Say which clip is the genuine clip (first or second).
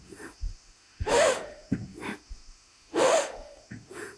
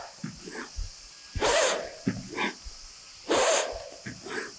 second